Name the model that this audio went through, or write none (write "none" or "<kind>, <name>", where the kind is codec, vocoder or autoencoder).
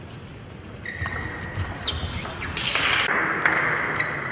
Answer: none